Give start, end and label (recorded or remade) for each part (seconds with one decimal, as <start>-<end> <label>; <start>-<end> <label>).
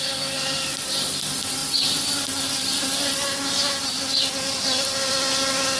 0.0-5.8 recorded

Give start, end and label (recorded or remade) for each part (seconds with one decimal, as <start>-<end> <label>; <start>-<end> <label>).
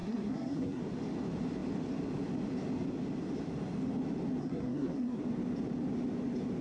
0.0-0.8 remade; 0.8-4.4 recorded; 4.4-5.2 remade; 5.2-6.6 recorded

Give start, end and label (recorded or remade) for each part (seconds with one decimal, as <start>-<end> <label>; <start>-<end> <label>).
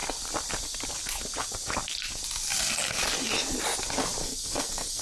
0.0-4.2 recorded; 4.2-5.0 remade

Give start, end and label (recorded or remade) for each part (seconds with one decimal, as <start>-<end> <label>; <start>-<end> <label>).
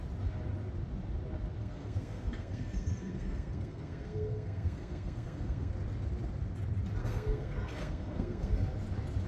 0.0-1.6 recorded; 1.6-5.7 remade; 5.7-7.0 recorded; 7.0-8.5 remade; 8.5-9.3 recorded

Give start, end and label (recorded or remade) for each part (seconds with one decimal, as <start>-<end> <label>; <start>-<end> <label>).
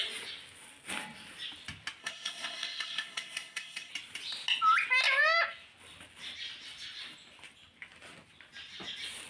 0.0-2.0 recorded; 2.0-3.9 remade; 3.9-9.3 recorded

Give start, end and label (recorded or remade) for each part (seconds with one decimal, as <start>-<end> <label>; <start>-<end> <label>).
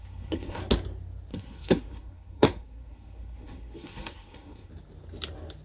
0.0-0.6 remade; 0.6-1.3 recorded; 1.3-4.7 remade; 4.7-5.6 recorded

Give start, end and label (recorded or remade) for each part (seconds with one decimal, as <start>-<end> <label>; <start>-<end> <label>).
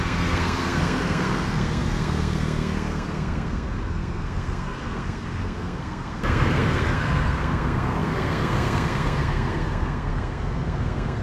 0.0-11.2 remade